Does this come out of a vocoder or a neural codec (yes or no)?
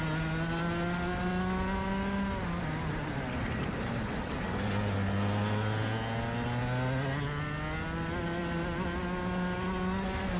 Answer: no